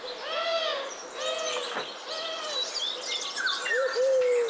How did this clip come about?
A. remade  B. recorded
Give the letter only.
B